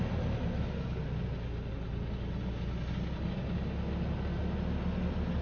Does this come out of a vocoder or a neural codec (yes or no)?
no